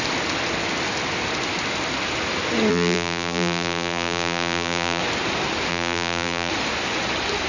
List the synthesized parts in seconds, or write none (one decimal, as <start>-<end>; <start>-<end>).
2.7-5.0; 5.7-6.5

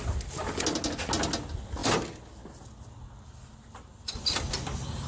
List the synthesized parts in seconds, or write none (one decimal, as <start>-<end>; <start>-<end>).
none

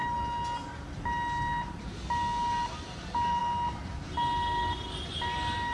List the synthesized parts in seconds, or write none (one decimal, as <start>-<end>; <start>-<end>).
none